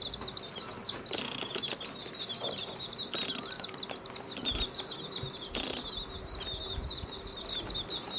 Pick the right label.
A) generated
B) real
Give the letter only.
B